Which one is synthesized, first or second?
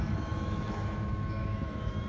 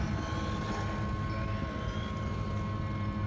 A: first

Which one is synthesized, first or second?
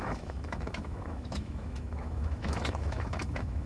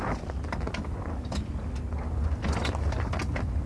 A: first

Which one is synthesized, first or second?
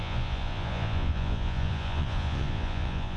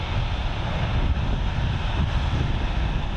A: first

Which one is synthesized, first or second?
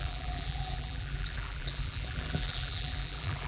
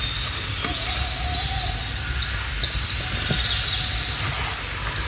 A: first